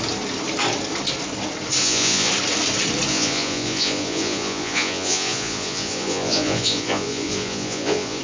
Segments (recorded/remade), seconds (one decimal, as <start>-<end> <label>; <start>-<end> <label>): 0.0-1.8 recorded; 1.8-2.3 remade; 2.3-3.1 recorded; 3.1-8.2 remade